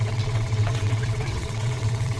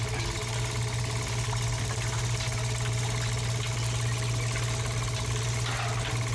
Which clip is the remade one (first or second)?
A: first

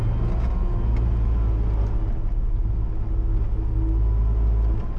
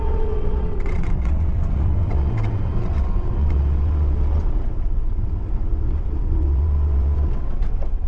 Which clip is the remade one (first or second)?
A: second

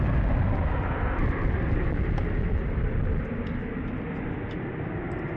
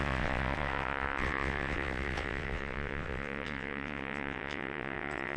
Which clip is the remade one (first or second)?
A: second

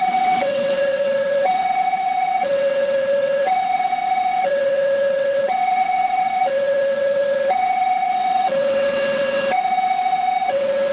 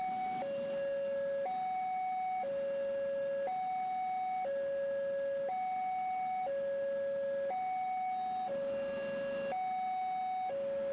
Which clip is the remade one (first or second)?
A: first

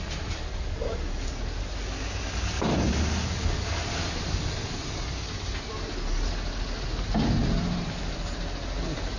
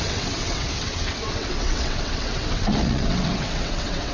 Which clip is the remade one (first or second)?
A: second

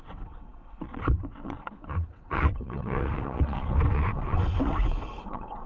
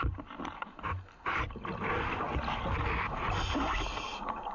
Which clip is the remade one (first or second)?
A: first